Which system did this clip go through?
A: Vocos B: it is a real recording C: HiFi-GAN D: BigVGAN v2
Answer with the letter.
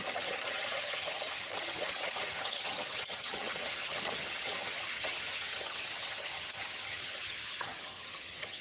C